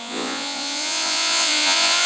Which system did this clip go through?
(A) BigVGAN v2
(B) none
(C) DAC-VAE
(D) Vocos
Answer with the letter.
D